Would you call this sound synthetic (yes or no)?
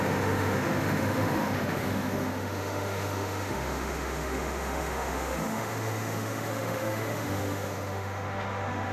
yes